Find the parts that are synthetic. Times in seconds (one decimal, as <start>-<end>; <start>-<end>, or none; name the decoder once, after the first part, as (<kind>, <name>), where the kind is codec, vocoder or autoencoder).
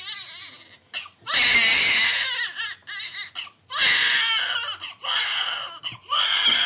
none